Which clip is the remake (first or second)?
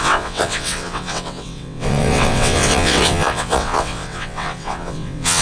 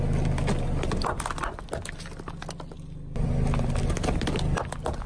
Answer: first